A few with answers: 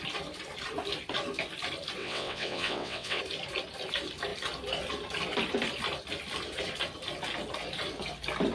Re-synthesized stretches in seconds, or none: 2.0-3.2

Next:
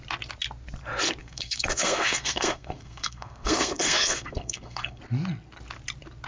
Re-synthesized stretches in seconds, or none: 1.2-5.0